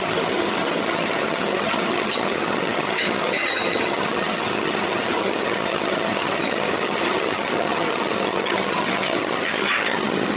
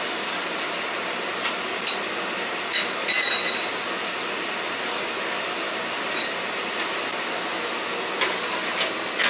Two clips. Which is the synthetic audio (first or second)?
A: first